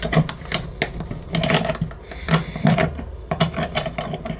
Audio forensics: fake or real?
real